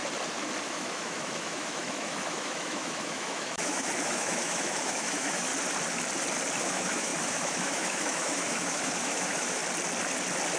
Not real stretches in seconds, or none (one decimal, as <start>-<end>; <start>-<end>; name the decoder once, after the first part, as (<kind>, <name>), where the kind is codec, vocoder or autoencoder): 0.6-5.5 (autoencoder, DAC-VAE); 6.6-9.6